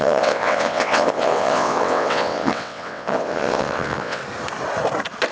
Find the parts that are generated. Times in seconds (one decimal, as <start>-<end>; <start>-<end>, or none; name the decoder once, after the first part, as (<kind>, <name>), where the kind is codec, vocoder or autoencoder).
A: 0.0-4.2 (vocoder, WaveNeXt)